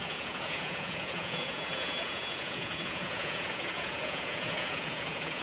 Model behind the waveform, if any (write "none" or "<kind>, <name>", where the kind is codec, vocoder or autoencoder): vocoder, Vocos